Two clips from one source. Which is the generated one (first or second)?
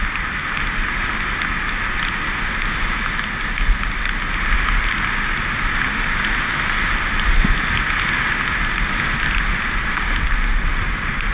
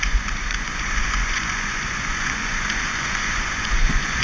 second